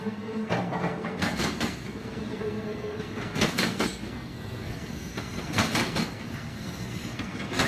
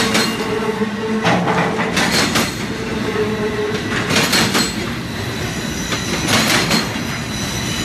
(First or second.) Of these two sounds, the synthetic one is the first